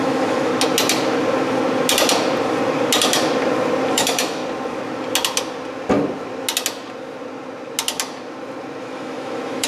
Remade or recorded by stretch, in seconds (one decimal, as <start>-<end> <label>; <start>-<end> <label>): 0.0-0.5 remade; 0.5-3.9 recorded; 3.9-4.4 remade; 4.4-8.8 recorded; 8.8-9.7 remade